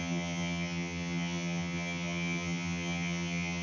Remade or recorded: remade